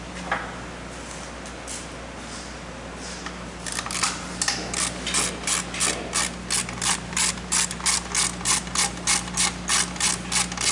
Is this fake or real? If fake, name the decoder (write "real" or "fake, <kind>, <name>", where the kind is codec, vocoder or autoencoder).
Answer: real